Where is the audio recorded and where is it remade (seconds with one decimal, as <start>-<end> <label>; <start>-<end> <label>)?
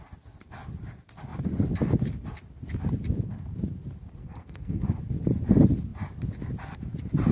0.0-4.2 recorded; 4.2-4.8 remade; 4.8-7.3 recorded